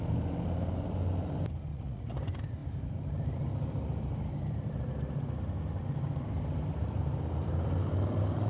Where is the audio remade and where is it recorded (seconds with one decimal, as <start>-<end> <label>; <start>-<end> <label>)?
0.0-1.7 recorded; 1.7-2.2 remade; 2.2-8.5 recorded